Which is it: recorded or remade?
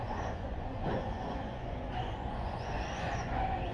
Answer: remade